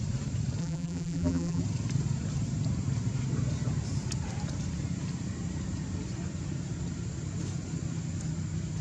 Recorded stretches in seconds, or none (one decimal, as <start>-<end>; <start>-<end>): 0.0-0.6; 1.6-8.8